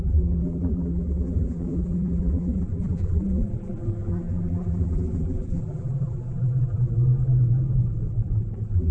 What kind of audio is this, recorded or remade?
remade